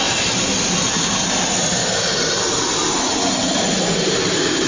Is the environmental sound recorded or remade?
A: recorded